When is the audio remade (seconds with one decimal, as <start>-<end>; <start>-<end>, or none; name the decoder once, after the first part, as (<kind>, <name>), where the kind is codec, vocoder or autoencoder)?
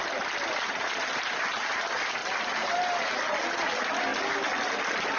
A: none